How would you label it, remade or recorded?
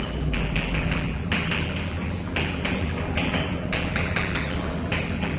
remade